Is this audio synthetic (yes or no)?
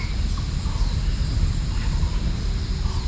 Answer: no